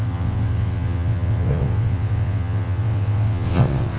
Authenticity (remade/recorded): remade